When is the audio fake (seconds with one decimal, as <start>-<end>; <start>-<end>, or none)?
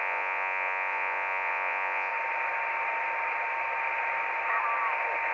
0.0-2.1